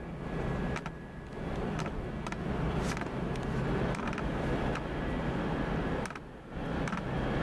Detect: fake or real real